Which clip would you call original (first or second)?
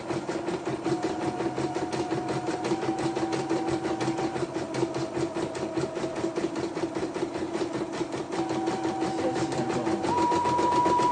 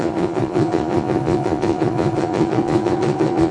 first